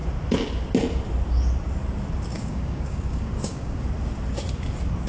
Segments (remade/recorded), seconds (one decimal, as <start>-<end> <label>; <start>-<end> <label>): 0.0-2.3 recorded; 2.3-3.8 remade; 3.8-5.1 recorded